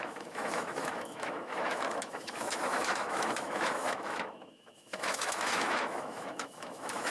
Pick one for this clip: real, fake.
fake